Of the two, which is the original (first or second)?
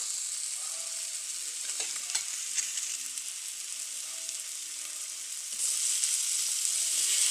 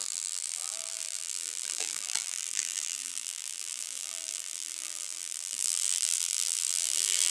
first